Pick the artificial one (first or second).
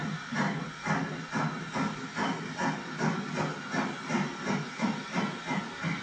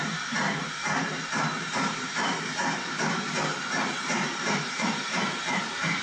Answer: second